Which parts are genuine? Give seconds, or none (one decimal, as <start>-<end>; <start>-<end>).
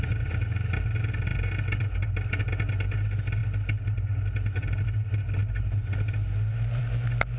0.0-7.4